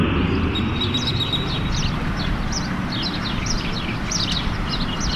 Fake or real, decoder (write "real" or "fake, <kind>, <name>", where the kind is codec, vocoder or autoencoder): real